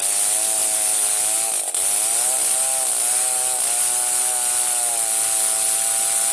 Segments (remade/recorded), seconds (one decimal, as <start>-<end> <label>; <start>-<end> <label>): 0.0-6.3 recorded